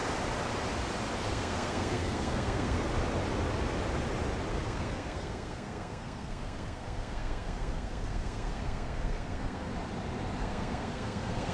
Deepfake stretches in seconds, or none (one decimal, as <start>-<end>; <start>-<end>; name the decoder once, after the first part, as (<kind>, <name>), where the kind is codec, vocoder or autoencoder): 1.3-2.9 (codec, SNAC); 4.5-9.7; 10.4-11.5